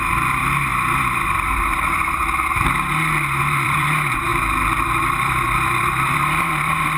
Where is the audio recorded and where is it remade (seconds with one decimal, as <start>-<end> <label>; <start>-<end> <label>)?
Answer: 0.0-2.2 remade; 2.2-3.4 recorded; 3.4-4.3 remade; 4.3-5.0 recorded; 5.0-7.0 remade